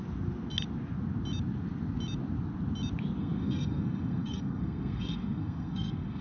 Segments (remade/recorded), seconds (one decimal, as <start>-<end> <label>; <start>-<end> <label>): 0.0-3.2 recorded; 3.2-6.2 remade